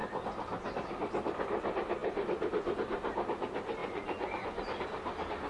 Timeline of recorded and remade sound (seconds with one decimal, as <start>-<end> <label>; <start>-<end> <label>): 0.0-3.8 recorded; 3.8-4.6 remade; 4.6-5.5 recorded